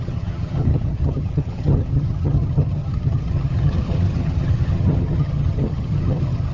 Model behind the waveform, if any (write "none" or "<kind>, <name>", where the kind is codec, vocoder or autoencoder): vocoder, HiFi-GAN